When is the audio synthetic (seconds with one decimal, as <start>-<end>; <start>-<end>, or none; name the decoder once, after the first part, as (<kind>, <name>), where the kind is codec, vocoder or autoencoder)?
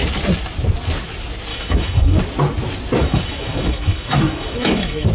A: 1.5-2.2 (autoencoder, DAC-VAE); 3.0-5.1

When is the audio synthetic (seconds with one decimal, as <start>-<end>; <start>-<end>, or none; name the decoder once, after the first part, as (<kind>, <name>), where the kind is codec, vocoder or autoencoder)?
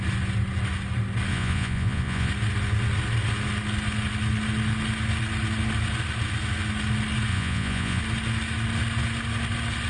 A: 1.3-2.3 (vocoder, Vocos); 7.3-8.0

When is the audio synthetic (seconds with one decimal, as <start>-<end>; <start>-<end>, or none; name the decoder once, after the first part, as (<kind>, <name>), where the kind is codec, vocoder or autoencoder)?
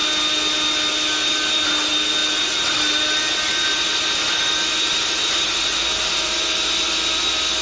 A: none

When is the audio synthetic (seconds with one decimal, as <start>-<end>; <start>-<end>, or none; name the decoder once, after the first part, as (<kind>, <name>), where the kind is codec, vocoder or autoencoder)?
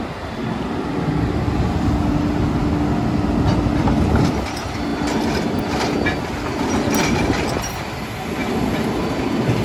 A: none